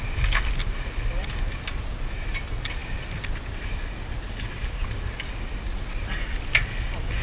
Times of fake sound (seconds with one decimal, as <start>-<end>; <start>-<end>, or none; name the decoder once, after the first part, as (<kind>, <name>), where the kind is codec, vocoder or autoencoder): none